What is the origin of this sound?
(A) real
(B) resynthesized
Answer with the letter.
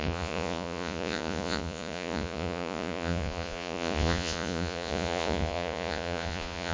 B